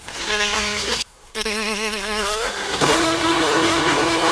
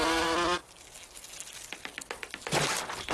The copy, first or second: first